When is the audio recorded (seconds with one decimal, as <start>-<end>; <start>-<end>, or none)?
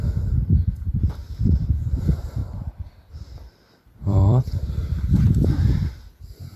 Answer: 1.2-1.8